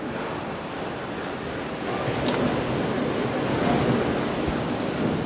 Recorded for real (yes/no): yes